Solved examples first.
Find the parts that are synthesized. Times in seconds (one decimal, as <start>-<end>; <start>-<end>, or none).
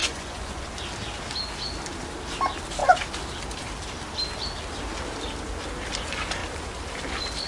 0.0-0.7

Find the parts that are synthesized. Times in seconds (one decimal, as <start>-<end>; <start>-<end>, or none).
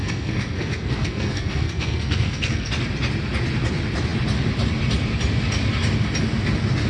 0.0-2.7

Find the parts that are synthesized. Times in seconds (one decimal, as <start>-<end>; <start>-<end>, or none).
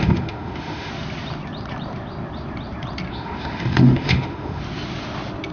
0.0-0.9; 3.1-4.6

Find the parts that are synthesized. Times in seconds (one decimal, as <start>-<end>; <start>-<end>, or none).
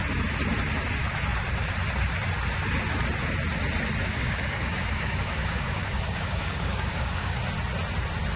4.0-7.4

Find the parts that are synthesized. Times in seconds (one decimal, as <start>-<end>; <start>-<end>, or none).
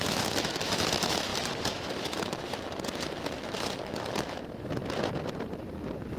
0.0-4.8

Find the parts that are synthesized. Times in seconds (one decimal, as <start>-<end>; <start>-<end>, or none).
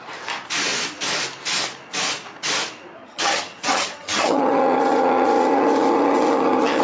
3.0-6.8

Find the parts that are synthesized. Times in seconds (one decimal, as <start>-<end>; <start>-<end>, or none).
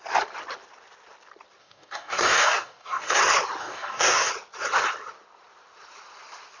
1.6-3.2; 3.6-4.3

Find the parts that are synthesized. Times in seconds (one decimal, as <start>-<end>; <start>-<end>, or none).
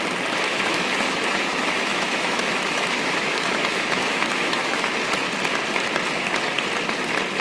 0.5-4.9